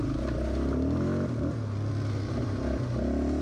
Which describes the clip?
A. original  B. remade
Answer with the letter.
A